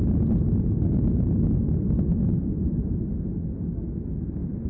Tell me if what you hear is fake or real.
real